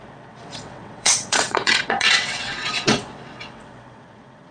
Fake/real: fake